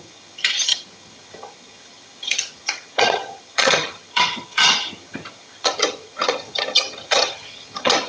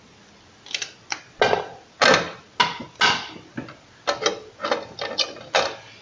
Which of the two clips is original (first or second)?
second